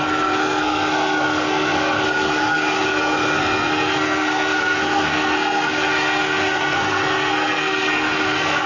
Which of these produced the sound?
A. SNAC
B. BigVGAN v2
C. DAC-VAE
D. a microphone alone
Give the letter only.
A